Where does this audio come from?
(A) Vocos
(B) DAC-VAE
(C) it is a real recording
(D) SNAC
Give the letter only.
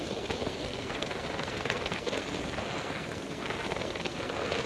D